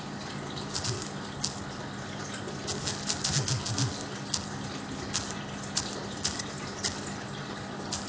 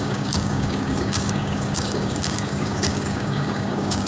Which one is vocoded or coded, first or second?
second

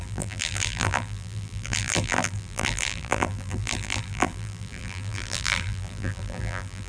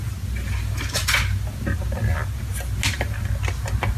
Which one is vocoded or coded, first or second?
first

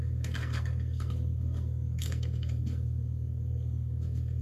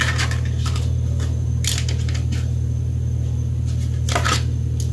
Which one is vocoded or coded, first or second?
first